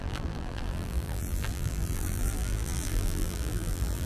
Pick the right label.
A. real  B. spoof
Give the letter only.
B